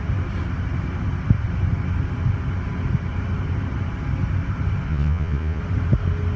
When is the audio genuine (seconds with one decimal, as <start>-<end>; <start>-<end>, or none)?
0.0-4.9; 5.6-6.4